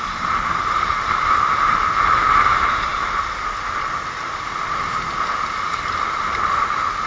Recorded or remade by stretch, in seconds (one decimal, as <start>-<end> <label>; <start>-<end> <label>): 0.0-7.1 recorded